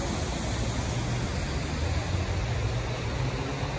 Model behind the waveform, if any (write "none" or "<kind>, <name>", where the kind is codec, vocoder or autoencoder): none